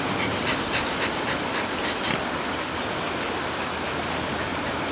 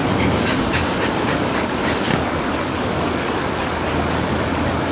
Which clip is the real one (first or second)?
first